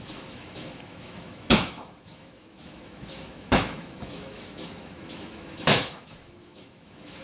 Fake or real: fake